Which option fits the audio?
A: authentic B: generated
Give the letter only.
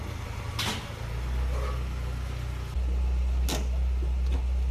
A